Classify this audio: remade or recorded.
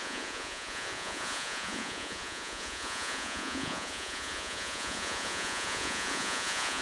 remade